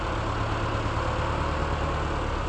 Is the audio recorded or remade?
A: recorded